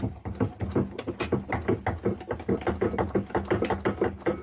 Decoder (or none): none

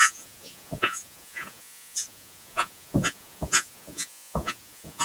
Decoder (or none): vocoder, Vocos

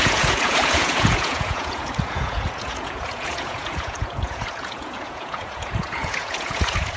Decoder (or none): vocoder, Vocos